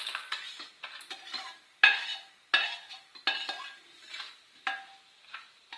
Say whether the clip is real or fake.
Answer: real